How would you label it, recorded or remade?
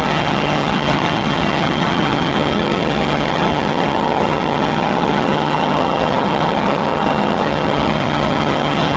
remade